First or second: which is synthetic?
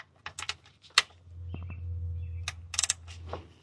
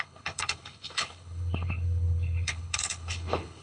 second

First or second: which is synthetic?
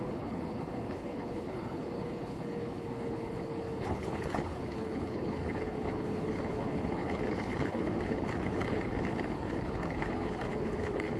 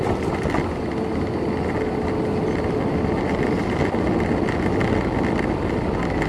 first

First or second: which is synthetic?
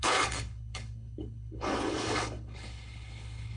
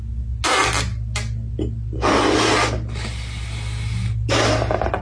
first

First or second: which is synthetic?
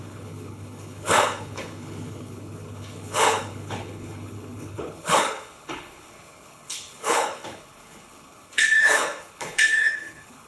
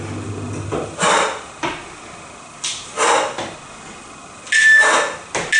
first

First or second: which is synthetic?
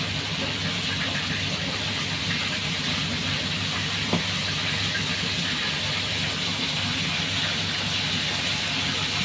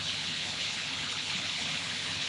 second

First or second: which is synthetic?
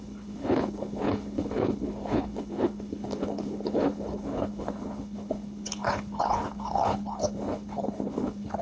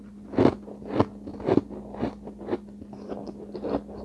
first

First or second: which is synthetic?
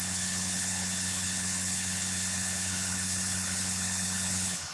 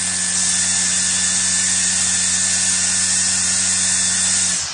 first